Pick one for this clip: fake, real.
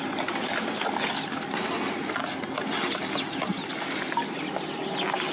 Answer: real